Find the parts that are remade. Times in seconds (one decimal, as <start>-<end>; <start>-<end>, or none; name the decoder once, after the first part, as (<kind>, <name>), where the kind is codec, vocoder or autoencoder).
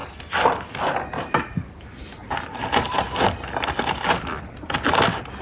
none